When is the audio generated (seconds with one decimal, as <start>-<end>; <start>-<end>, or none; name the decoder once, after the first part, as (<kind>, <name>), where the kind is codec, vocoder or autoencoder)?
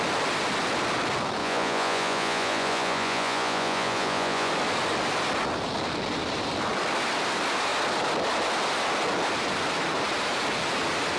1.4-4.5 (vocoder, Vocos)